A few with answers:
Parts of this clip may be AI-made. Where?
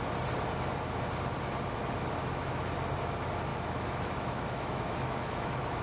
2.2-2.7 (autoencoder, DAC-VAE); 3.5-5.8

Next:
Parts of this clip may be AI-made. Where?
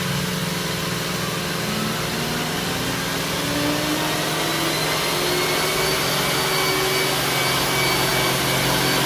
none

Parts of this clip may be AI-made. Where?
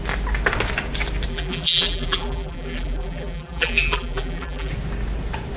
1.3-4.7 (vocoder, BigVGAN v2)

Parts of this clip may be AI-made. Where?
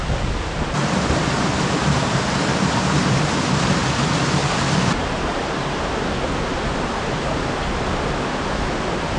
0.8-1.4 (vocoder, BigVGAN v2); 4.4-5.8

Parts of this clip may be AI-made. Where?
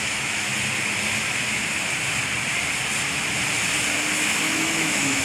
0.0-0.5 (autoencoder, DAC-VAE); 1.2-1.6; 4.4-5.2